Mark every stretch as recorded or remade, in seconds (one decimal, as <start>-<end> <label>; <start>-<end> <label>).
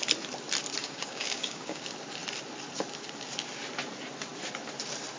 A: 0.0-0.8 recorded; 0.8-1.8 remade; 1.8-5.2 recorded